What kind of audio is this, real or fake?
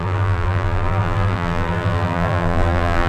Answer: fake